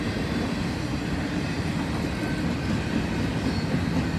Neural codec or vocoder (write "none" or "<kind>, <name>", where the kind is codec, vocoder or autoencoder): none